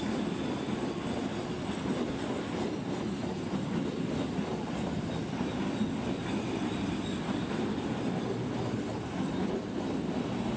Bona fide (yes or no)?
yes